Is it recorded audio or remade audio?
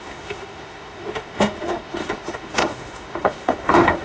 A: remade